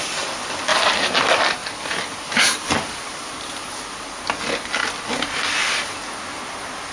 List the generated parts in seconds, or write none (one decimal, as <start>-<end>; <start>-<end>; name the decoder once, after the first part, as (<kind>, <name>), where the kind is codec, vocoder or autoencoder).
0.7-1.2 (vocoder, BigVGAN v2); 1.6-3.2